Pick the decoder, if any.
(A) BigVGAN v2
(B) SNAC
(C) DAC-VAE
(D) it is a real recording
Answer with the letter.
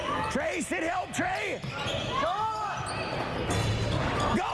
D